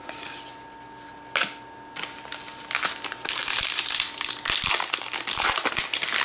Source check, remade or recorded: recorded